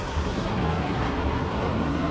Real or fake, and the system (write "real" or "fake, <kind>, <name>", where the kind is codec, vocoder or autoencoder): fake, codec, SNAC